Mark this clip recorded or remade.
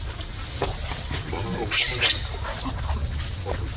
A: recorded